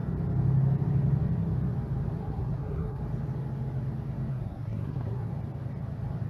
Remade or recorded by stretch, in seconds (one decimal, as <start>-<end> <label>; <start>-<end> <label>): 0.0-2.2 recorded; 2.2-3.0 remade; 3.0-4.3 recorded; 4.3-5.3 remade; 5.3-6.3 recorded